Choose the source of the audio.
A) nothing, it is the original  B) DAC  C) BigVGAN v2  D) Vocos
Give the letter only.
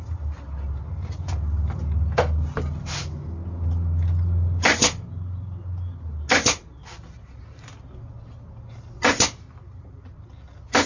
A